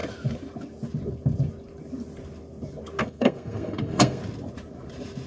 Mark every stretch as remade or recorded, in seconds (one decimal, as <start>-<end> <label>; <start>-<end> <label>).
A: 0.0-3.0 recorded; 3.0-4.2 remade; 4.2-5.3 recorded